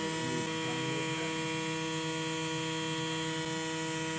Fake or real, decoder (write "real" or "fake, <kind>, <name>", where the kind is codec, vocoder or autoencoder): real